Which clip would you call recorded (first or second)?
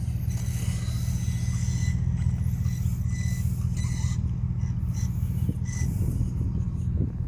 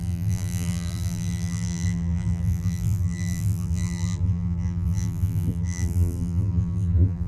first